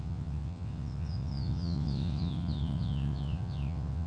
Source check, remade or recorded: remade